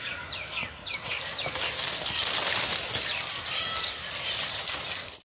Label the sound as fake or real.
real